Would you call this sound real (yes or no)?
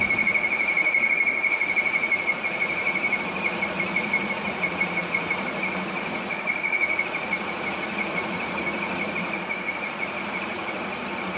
no